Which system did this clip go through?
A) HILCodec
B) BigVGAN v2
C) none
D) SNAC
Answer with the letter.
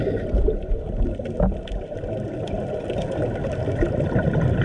C